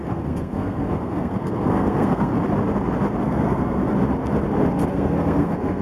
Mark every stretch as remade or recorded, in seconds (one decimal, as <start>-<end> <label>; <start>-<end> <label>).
0.0-2.3 remade; 2.3-3.2 recorded; 3.2-3.8 remade; 3.8-4.9 recorded; 4.9-5.8 remade